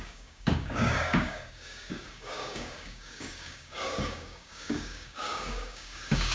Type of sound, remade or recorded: remade